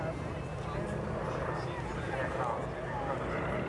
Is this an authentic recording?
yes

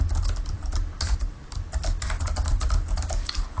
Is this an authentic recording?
yes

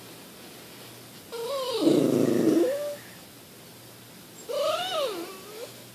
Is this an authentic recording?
yes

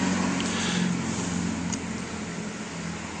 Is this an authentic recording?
yes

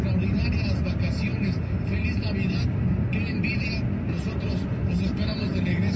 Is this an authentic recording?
yes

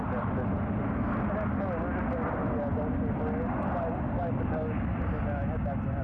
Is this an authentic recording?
yes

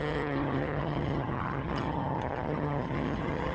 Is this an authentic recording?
no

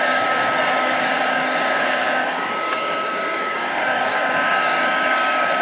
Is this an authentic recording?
no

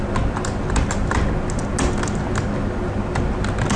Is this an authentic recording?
yes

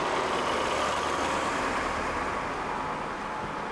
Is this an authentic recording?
yes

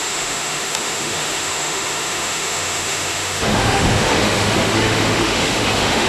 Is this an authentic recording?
no